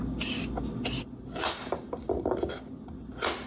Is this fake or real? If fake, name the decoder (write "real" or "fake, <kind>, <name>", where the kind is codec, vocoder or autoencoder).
real